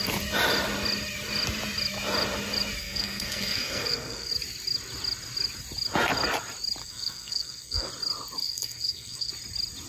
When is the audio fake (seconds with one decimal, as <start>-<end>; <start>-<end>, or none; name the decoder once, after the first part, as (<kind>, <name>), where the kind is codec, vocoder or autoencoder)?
2.8-4.3 (codec, SNAC); 6.8-7.9; 8.4-9.3